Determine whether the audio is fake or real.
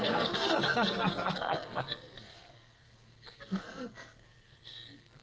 fake